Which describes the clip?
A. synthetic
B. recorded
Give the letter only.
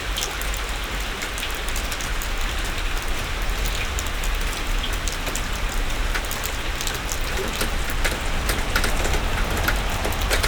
B